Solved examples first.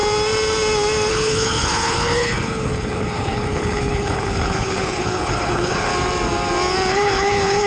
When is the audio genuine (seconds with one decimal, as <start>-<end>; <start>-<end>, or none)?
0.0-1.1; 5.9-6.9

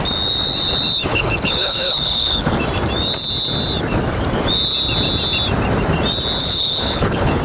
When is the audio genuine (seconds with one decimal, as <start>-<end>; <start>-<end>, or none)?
0.0-1.1; 2.6-6.4

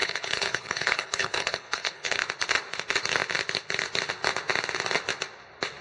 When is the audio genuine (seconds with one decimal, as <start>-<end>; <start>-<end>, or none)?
2.2-5.8